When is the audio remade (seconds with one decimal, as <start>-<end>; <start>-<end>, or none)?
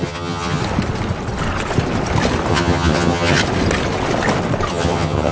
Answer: 0.0-0.6; 2.5-3.4; 4.7-5.3